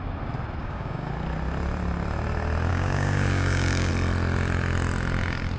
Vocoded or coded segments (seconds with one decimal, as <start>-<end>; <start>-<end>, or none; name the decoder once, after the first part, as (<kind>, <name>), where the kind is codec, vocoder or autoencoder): 0.6-1.1 (codec, DAC); 2.7-3.9